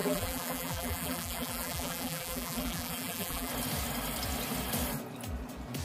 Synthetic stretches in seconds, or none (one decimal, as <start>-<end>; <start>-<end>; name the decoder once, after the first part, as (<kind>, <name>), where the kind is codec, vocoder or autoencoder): 0.0-3.5 (vocoder, BigVGAN v2)